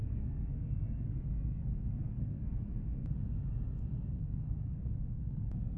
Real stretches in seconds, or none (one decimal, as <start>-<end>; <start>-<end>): 2.8-4.2